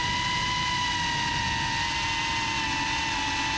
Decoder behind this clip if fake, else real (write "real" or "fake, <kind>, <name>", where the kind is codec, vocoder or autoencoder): real